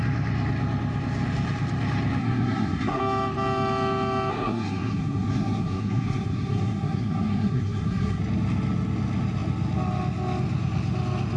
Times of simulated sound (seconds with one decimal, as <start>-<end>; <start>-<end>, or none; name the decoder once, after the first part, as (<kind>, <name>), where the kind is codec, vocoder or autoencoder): 2.2-3.0 (codec, SNAC); 4.3-8.2